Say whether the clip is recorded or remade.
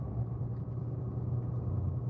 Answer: recorded